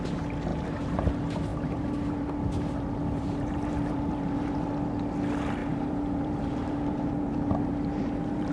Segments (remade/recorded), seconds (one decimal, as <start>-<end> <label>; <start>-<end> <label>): 0.0-0.5 recorded; 0.5-1.1 remade; 1.1-1.5 recorded; 1.5-4.7 remade; 4.7-5.6 recorded; 5.6-8.5 remade